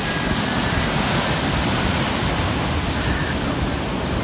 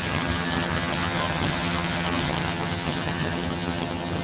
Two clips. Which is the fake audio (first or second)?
second